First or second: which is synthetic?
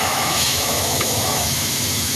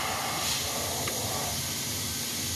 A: first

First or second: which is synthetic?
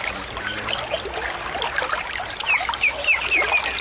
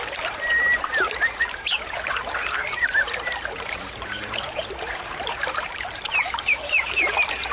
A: second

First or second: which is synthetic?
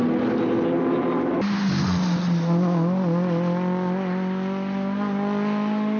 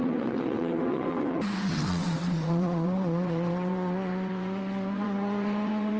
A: second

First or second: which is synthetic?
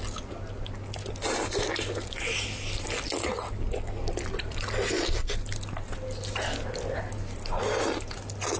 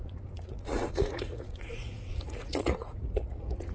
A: second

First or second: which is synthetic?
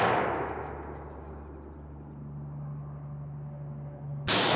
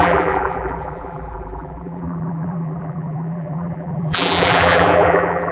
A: second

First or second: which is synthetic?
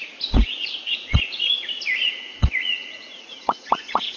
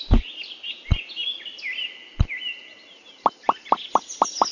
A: first